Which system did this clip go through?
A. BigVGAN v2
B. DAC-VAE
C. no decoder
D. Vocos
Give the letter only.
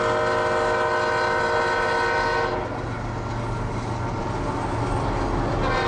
C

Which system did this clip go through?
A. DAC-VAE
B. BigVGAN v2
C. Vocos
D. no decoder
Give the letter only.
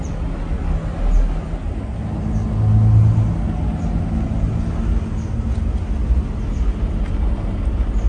D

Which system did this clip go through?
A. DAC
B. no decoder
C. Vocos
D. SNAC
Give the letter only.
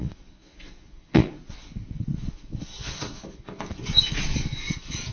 C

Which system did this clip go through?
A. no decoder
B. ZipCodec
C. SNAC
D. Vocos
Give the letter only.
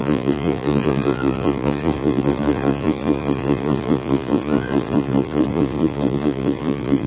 D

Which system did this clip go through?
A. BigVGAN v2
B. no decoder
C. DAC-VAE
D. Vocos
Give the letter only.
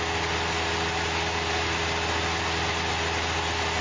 B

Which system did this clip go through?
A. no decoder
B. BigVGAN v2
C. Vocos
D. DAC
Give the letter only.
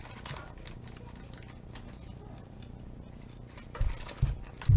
A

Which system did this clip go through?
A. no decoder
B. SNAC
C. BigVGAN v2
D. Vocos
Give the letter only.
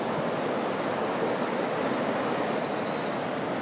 A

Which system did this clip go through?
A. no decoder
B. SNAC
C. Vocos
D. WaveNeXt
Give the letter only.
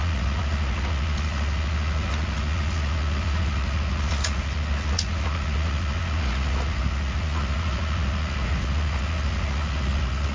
C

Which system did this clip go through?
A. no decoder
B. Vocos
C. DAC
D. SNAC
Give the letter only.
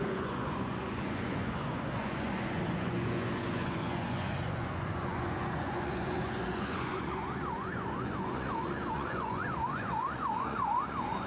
B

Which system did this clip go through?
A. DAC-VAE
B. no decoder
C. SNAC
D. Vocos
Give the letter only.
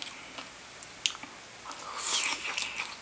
B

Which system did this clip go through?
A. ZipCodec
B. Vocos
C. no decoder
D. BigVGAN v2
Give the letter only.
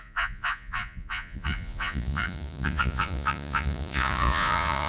B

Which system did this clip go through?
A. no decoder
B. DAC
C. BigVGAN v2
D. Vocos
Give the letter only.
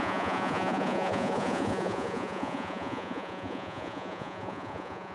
D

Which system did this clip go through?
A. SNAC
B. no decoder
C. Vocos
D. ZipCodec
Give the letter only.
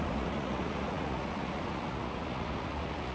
C